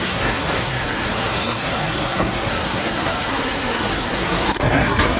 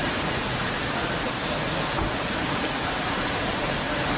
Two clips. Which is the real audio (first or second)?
second